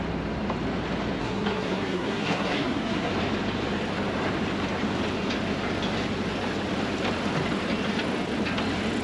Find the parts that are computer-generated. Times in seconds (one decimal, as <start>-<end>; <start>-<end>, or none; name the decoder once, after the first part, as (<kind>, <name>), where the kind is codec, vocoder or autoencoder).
1.2-3.1 (codec, SNAC)